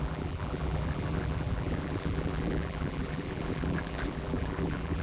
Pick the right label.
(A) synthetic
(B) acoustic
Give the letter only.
A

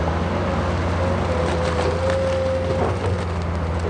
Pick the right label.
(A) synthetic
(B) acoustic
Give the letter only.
B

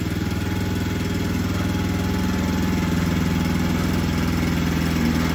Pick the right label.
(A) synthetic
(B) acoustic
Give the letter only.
B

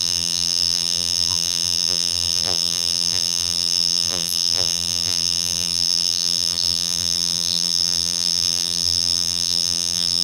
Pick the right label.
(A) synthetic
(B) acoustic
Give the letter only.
A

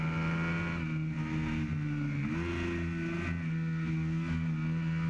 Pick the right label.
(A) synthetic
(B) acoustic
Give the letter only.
B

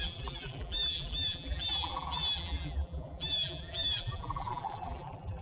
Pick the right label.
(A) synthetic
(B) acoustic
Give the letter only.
A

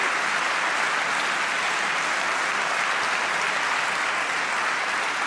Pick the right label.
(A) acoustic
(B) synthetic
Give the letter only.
A